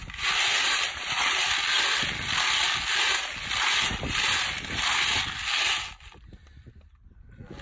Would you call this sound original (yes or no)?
yes